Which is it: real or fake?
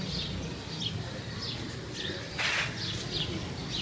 real